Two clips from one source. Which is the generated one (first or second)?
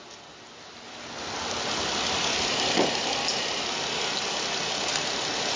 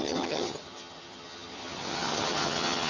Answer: second